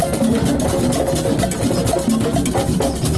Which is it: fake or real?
real